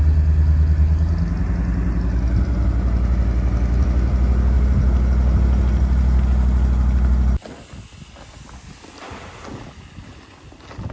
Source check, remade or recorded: recorded